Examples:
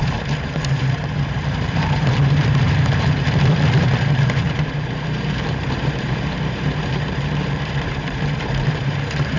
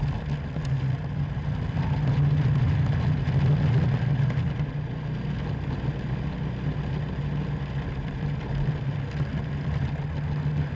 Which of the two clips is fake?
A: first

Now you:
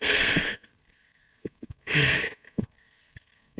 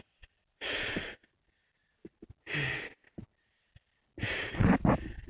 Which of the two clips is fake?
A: first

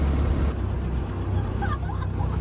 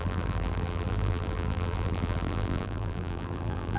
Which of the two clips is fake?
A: second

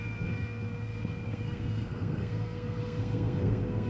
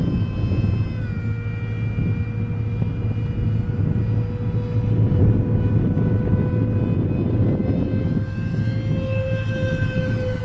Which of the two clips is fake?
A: first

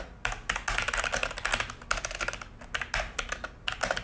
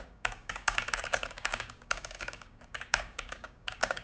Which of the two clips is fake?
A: second